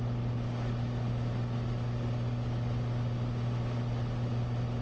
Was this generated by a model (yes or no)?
no